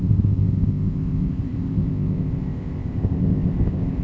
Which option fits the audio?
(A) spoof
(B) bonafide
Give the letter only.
A